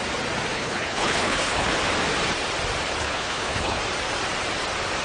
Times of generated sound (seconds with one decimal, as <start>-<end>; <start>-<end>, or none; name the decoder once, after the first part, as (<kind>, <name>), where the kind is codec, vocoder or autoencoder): 0.5-1.7 (codec, HILCodec); 3.0-3.8